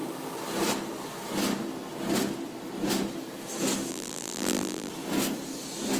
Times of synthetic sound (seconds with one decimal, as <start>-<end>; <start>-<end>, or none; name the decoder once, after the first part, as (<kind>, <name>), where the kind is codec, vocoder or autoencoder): 3.9-4.9 (vocoder, BigVGAN v2)